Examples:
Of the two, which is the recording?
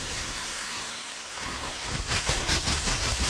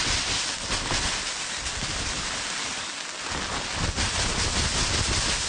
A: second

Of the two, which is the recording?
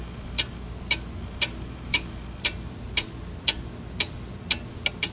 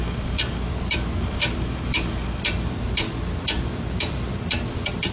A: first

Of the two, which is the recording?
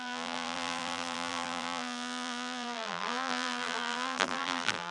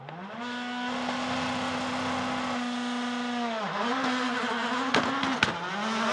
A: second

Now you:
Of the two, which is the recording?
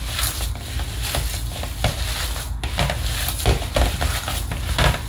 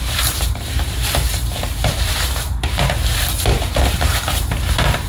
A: first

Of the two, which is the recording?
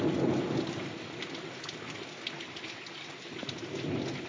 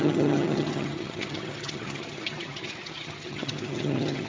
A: first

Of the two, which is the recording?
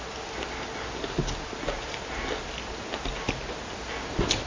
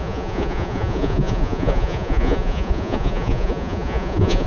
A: first